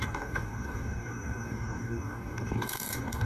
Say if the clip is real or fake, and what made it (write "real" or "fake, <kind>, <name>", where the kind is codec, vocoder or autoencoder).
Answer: fake, codec, DAC